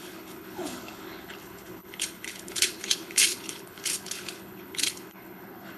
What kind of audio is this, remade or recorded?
remade